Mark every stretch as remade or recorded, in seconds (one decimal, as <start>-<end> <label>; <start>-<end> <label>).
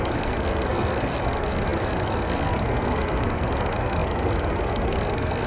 0.0-5.5 remade